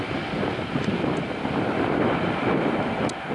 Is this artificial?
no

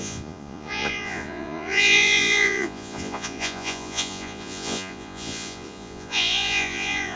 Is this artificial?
yes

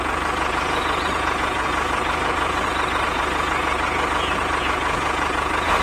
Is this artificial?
yes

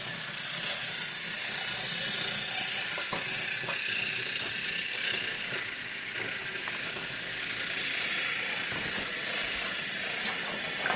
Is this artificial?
no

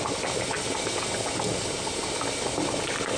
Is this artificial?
no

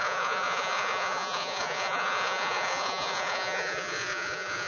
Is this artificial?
yes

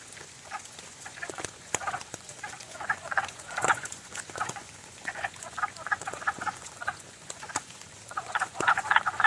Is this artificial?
yes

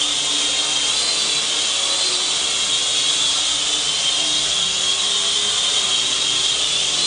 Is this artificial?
no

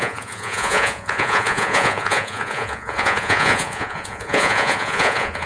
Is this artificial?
yes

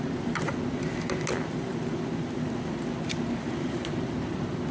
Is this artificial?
no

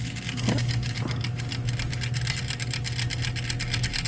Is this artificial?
no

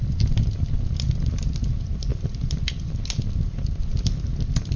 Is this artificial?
no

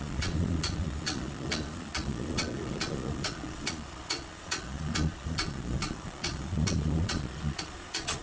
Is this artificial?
yes